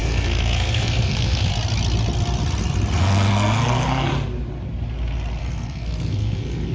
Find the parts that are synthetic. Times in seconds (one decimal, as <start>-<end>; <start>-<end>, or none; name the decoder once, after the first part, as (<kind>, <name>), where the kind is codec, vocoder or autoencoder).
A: 0.0-1.5 (codec, SNAC); 3.0-4.1; 5.4-6.7